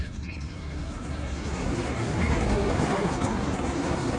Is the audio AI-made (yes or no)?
yes